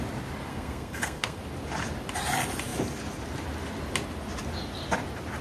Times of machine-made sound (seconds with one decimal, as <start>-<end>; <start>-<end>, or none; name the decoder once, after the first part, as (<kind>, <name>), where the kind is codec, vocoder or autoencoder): 0.5-1.4 (codec, SNAC)